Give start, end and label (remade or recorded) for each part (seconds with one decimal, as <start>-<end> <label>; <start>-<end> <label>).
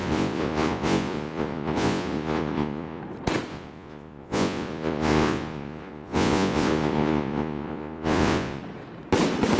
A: 0.0-3.0 remade; 3.0-3.5 recorded; 3.5-8.6 remade; 8.6-9.6 recorded